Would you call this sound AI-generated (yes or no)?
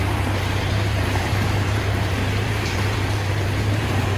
yes